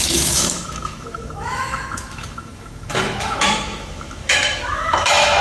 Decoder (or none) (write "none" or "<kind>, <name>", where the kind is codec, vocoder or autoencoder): autoencoder, DAC-VAE